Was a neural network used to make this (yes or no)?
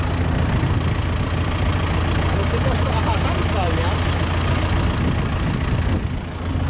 no